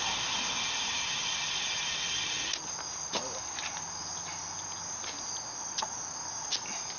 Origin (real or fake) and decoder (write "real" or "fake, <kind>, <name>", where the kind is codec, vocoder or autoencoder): real